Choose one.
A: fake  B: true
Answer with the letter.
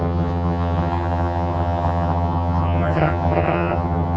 A